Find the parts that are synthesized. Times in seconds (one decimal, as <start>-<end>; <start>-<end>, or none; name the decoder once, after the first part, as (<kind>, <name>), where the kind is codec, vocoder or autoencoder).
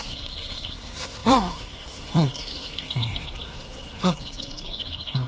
0.0-5.3 (codec, SNAC)